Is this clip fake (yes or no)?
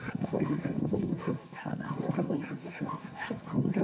yes